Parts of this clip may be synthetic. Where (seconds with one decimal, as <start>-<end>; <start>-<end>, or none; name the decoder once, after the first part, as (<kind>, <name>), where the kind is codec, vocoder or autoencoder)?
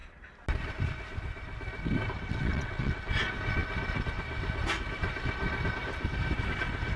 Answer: 2.3-3.0 (vocoder, WaveNeXt)